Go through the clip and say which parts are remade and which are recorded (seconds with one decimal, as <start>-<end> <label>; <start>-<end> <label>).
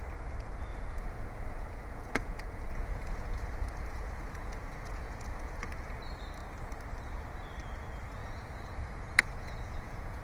0.0-0.7 recorded; 0.7-6.0 remade; 6.0-8.2 recorded; 8.2-10.2 remade